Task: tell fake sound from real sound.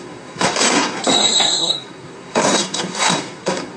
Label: fake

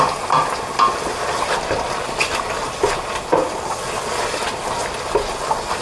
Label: real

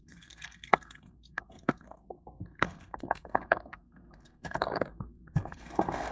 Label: fake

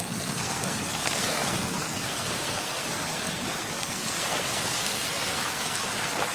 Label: fake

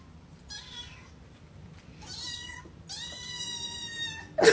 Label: real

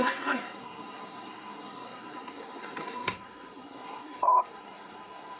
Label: fake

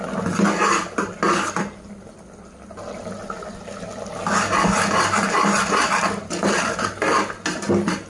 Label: real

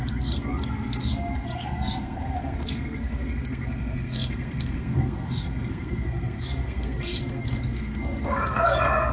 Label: fake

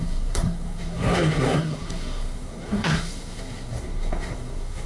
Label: fake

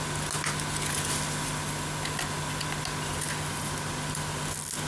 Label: real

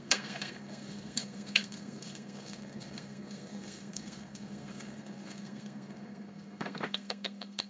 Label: fake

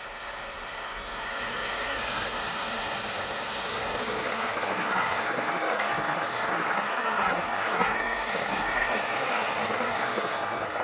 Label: fake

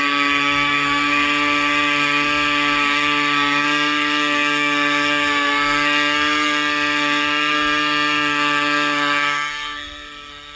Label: fake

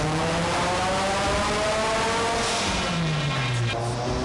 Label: real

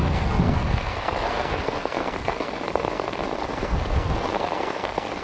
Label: fake